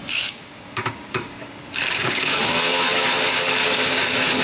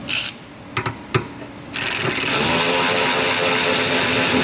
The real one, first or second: second